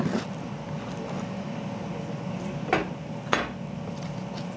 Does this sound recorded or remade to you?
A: recorded